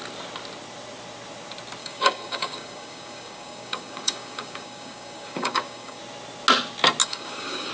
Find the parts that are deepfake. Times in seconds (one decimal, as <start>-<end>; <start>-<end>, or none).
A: 1.8-6.0; 7.0-7.7